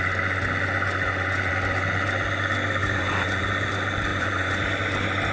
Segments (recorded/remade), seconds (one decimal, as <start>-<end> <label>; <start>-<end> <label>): 0.0-0.9 recorded; 0.9-1.5 remade; 1.5-2.8 recorded; 2.8-3.4 remade; 3.4-4.1 recorded; 4.1-4.6 remade; 4.6-5.3 recorded